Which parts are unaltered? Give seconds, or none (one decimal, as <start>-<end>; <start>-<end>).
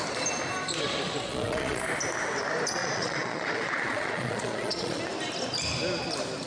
0.0-1.3; 1.8-2.8; 5.0-6.5